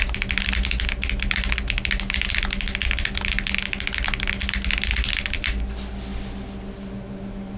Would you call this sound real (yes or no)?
yes